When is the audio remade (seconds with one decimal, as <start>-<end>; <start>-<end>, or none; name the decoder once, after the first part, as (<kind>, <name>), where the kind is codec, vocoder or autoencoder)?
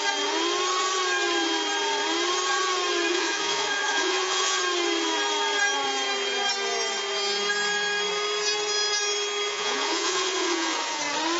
3.1-4.6 (vocoder, Vocos); 9.5-11.0